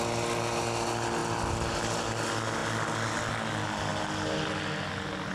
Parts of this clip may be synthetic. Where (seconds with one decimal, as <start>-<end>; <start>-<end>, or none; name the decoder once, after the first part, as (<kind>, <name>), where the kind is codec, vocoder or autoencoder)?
none